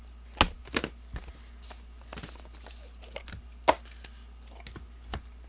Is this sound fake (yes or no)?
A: no